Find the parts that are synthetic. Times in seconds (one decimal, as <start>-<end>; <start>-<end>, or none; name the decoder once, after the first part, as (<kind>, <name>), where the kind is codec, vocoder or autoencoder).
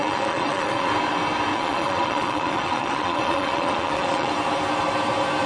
0.0-0.9 (vocoder, Vocos); 1.5-4.3